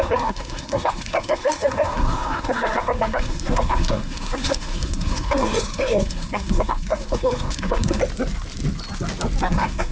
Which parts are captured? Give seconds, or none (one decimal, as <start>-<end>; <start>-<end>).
8.0-9.5